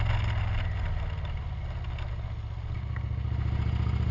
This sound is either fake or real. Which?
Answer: real